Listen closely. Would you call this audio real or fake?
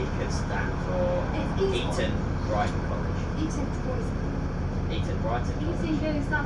real